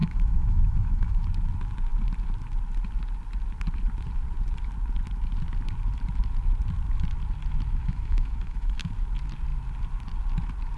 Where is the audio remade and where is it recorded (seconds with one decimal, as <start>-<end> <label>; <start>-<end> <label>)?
0.0-1.2 remade; 1.2-7.8 recorded; 7.8-8.9 remade; 8.9-10.8 recorded